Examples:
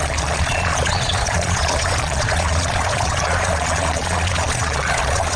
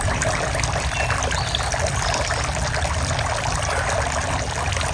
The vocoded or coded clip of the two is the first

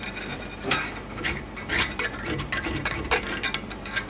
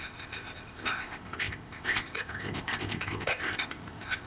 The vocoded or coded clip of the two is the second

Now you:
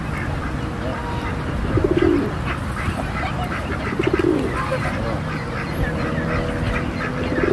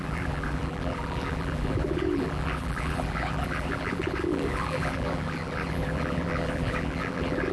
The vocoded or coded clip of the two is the second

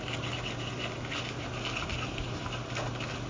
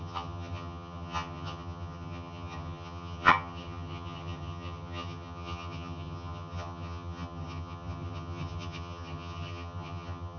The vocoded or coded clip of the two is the second